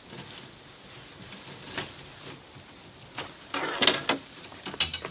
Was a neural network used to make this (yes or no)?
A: no